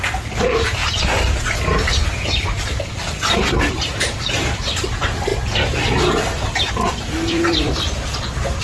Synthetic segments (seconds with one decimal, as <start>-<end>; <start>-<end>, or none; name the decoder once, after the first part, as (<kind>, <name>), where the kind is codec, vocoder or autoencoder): 0.0-0.8 (vocoder, BigVGAN v2); 3.5-5.3; 6.7-8.6